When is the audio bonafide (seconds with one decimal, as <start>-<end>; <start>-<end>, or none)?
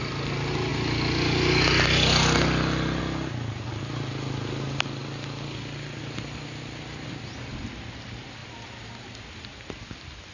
0.0-10.3